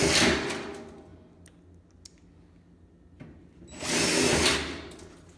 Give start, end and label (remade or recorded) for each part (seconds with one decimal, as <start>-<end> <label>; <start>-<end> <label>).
0.0-5.4 recorded